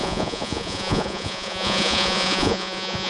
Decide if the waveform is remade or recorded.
remade